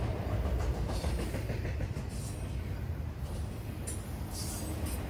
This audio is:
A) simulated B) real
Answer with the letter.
B